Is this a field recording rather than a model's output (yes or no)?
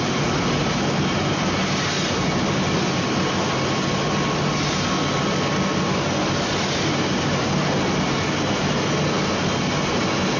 yes